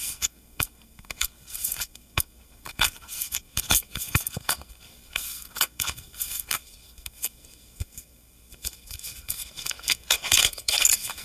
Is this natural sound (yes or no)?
no